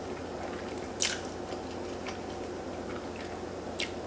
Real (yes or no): yes